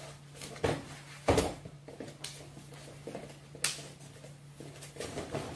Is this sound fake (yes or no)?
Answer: no